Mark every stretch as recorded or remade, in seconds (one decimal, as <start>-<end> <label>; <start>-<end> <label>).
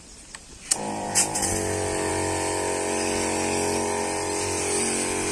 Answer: 0.0-0.7 recorded; 0.7-1.5 remade; 1.5-5.3 recorded